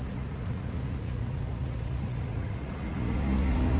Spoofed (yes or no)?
yes